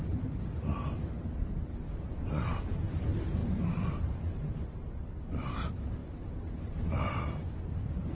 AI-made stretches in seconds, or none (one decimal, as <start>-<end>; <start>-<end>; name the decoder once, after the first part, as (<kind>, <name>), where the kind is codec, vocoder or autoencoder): none